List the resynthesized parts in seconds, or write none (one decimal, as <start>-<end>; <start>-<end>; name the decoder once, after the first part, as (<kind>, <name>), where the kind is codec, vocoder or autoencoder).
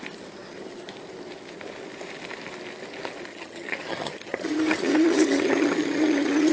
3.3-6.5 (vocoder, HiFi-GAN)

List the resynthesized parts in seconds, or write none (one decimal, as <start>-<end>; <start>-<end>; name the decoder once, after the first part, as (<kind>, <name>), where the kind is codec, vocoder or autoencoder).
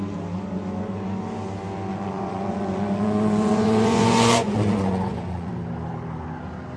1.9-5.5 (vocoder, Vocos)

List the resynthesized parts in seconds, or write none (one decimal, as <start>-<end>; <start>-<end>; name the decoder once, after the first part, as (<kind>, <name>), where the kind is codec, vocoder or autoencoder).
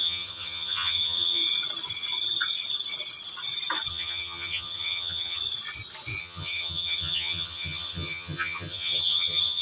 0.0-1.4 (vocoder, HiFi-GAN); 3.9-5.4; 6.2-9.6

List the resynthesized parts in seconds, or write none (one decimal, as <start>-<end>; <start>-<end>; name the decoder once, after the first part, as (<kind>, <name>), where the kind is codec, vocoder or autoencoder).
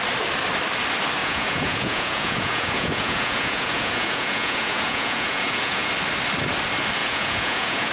1.2-5.9 (vocoder, Vocos); 7.0-7.9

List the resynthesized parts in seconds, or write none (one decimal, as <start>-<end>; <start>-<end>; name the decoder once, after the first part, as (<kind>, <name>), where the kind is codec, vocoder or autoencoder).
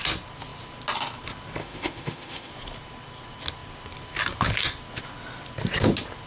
1.6-2.5 (autoencoder, DAC-VAE)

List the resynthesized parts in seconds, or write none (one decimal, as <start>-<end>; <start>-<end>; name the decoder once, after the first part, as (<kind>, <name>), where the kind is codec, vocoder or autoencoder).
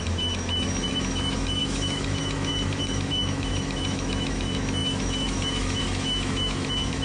0.0-7.0 (autoencoder, DAC-VAE)